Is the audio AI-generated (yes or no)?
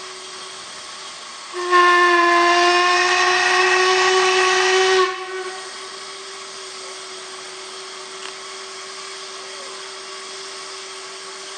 no